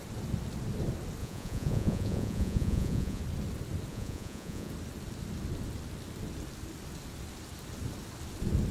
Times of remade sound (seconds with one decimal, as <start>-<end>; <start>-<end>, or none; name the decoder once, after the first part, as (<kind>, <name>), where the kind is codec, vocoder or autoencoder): 1.2-3.2 (vocoder, Vocos); 3.9-4.7